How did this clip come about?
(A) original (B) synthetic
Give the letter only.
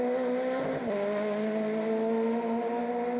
A